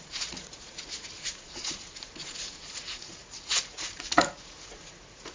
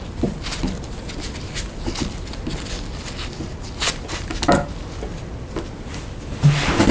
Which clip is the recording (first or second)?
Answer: second